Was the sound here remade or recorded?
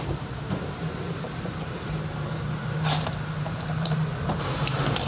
remade